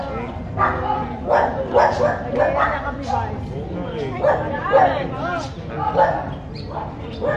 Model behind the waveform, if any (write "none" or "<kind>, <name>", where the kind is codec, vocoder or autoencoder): none